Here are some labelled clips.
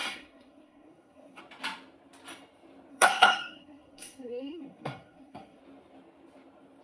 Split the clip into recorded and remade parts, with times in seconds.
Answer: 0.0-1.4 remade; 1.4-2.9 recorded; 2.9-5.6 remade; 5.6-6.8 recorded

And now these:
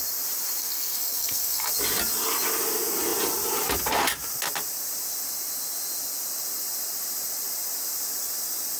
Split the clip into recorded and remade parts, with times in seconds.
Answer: 0.0-0.6 recorded; 0.6-1.7 remade; 1.7-8.8 recorded

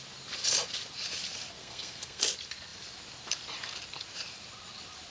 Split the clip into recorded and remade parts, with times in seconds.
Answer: 0.0-1.6 recorded; 1.6-2.2 remade; 2.2-5.1 recorded

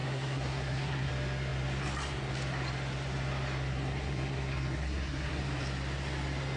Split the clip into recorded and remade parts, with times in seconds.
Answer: 0.0-1.1 remade; 1.1-3.7 recorded; 3.7-5.4 remade; 5.4-6.6 recorded

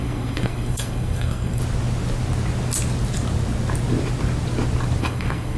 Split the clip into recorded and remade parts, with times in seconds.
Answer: 0.0-1.6 remade; 1.6-5.0 recorded; 5.0-5.6 remade

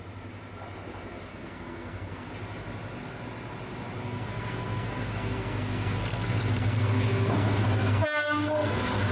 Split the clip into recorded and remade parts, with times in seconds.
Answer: 0.0-1.3 recorded; 1.3-2.3 remade; 2.3-4.0 recorded; 4.0-9.1 remade

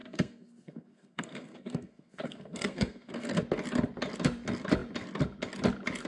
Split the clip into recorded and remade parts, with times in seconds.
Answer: 0.0-3.4 remade; 3.4-6.1 recorded

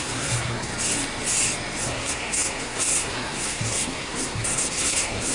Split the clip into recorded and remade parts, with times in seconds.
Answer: 0.0-0.7 remade; 0.7-1.8 recorded; 1.8-5.3 remade